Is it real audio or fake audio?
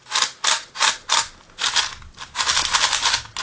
real